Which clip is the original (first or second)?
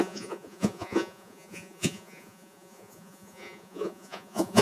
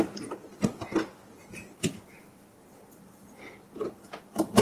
second